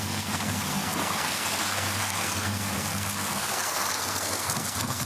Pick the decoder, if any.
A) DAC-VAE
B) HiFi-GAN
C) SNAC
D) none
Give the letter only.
C